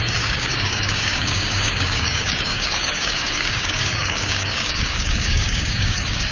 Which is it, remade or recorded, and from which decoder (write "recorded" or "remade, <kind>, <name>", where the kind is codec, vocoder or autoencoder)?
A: remade, codec, DAC